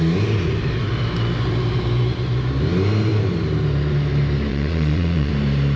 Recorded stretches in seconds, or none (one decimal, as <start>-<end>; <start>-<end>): 0.0-4.5; 5.3-5.8